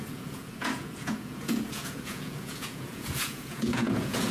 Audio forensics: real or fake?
fake